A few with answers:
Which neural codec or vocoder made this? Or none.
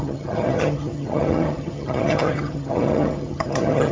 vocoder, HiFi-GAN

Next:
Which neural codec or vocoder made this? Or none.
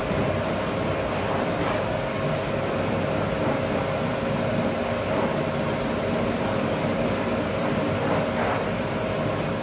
none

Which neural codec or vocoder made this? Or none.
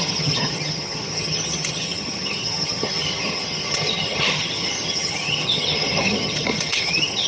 vocoder, HiFi-GAN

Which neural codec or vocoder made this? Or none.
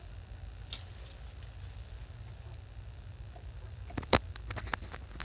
none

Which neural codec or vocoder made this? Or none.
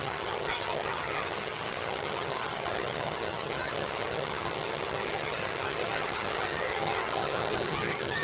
vocoder, HiFi-GAN